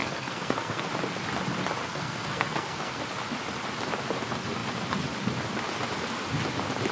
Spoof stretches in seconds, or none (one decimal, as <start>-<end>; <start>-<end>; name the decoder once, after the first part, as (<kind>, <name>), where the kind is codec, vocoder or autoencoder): 0.0-0.9 (codec, SNAC); 1.8-3.0